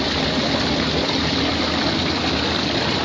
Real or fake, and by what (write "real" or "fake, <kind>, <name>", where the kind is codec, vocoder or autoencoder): real